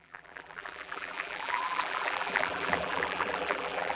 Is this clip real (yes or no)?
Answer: no